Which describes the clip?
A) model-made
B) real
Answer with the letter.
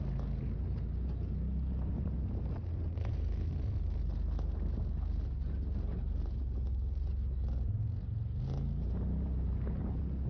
B